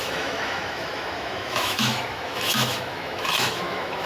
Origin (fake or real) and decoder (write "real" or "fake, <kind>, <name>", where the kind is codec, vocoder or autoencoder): fake, autoencoder, DAC-VAE